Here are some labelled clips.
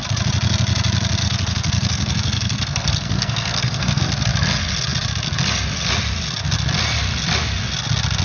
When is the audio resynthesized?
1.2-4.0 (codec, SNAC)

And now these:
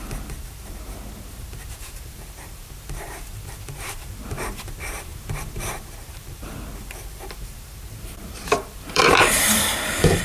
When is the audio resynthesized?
0.0-10.2 (vocoder, BigVGAN v2)

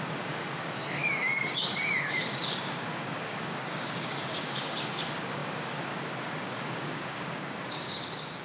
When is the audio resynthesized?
0.0-8.4 (codec, DAC)

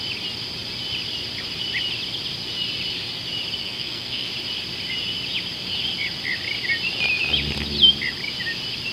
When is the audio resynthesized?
3.6-4.3 (codec, SNAC)

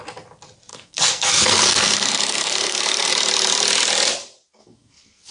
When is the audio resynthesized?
0.7-3.1 (codec, SNAC); 4.6-5.3

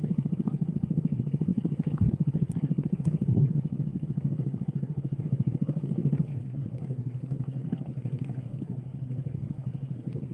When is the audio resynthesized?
0.0-10.3 (codec, SNAC)